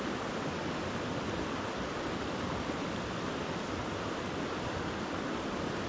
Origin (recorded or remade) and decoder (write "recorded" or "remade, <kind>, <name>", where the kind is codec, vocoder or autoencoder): recorded